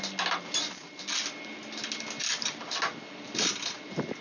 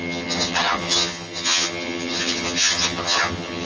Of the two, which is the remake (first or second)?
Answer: second